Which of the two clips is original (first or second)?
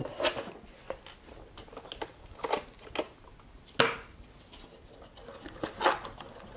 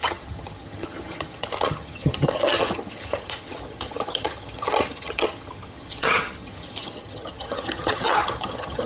first